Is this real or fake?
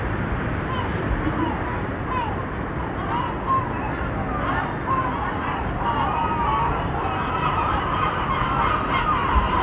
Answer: real